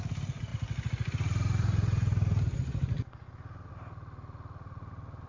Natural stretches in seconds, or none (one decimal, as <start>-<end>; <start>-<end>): 0.0-5.3